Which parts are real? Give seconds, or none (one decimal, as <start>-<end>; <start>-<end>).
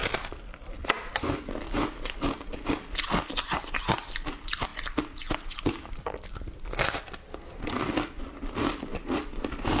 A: 0.0-2.6; 4.7-9.8